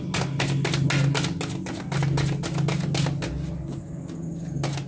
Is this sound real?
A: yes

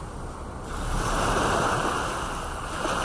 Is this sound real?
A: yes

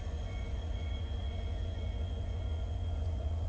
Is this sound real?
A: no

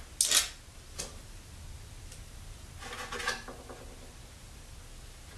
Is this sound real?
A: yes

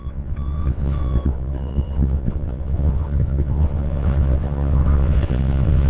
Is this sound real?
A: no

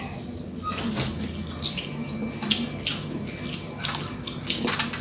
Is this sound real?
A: yes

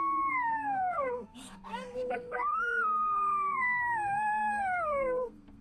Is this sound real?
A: no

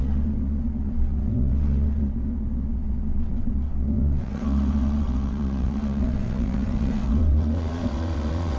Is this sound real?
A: no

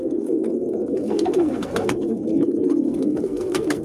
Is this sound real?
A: no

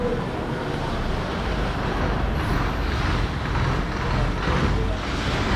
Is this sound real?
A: yes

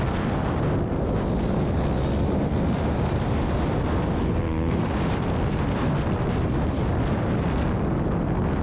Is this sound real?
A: yes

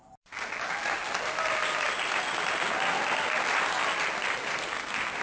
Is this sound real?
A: yes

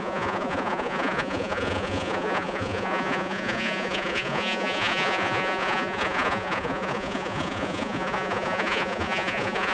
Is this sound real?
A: no